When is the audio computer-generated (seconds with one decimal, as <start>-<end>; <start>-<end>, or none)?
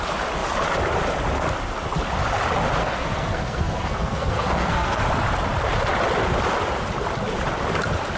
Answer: 2.8-5.0